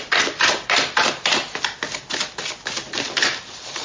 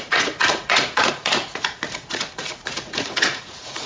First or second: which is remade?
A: second